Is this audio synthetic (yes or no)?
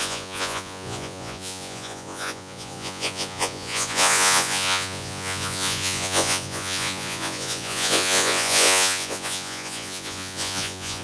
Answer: yes